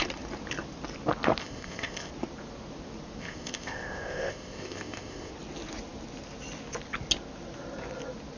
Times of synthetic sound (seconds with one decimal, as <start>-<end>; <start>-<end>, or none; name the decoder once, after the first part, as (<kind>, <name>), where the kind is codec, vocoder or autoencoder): 1.4-2.1 (codec, ZipCodec); 3.2-5.3